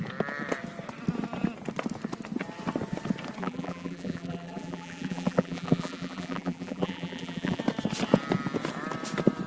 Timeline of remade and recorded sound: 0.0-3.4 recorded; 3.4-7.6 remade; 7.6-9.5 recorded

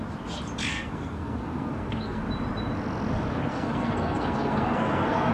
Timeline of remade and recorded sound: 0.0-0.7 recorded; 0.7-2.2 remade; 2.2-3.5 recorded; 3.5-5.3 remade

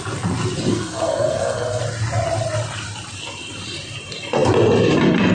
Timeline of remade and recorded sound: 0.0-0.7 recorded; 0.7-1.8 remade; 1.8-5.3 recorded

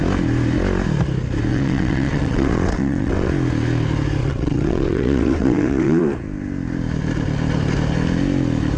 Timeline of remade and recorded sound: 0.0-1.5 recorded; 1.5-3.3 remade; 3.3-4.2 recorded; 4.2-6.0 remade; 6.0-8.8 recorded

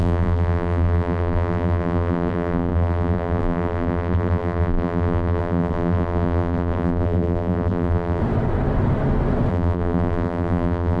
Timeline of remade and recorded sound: 0.0-8.2 remade; 8.2-9.5 recorded; 9.5-11.0 remade

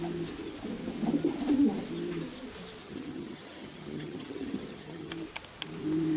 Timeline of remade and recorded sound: 0.0-2.8 recorded; 2.8-5.1 remade; 5.1-6.2 recorded

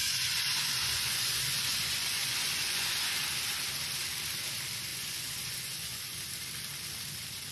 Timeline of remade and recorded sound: 0.0-3.1 remade; 3.1-4.9 recorded; 4.9-6.3 remade; 6.3-7.5 recorded